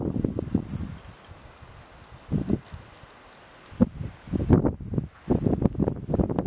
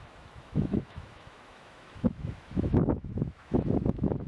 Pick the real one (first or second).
first